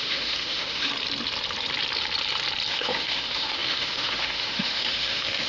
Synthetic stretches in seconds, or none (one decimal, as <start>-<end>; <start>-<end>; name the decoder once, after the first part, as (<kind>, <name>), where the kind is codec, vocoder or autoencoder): 0.0-0.9 (autoencoder, DAC-VAE); 2.7-5.5